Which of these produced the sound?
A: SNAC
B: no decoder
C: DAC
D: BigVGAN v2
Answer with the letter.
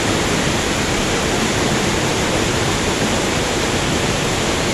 D